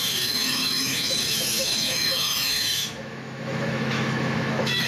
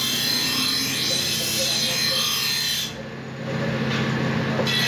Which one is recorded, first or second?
second